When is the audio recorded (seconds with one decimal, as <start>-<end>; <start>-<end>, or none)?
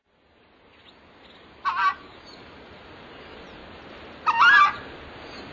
0.0-1.9; 3.6-5.5